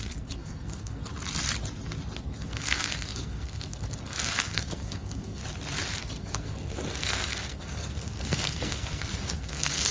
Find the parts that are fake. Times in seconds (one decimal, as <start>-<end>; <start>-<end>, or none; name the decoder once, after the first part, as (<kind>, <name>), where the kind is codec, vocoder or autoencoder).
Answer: 0.0-1.0 (codec, SNAC); 2.2-5.4; 6.0-9.9